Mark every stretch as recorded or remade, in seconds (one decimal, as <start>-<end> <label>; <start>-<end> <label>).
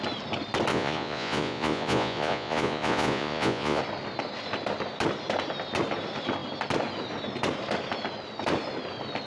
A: 0.0-0.7 recorded; 0.7-3.8 remade; 3.8-9.3 recorded